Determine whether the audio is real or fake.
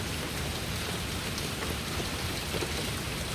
real